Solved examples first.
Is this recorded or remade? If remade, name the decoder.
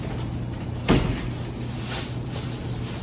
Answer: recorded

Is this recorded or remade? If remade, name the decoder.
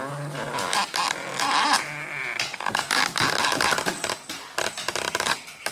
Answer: recorded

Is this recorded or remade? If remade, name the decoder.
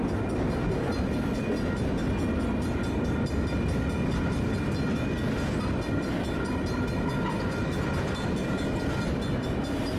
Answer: recorded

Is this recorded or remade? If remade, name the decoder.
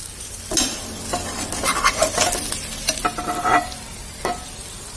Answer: recorded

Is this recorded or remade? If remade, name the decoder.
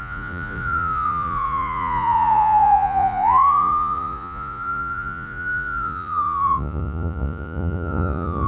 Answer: remade, vocoder, Vocos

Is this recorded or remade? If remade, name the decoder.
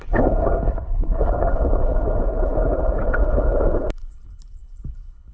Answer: remade, codec, HILCodec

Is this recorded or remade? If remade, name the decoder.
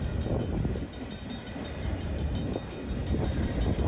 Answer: remade, vocoder, BigVGAN v2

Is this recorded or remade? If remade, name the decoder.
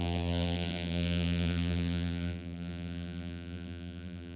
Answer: remade, vocoder, BigVGAN v2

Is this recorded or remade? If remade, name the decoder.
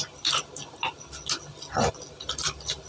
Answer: recorded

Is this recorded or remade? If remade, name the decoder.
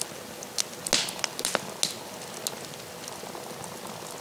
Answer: recorded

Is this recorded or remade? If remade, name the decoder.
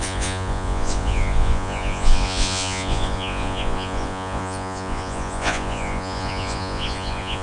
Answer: remade, vocoder, Vocos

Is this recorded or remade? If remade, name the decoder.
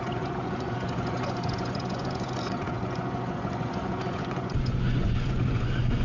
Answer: remade, vocoder, Vocos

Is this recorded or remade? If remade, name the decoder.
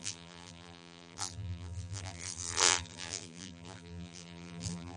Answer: remade, vocoder, BigVGAN v2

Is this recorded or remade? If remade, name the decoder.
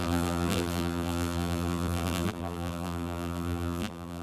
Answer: remade, vocoder, BigVGAN v2